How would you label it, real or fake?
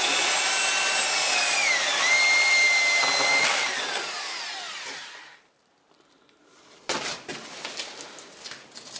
real